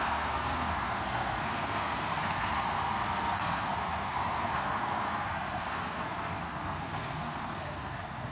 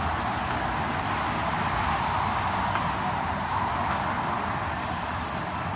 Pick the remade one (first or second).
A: first